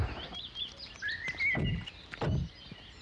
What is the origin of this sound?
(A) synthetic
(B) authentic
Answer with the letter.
B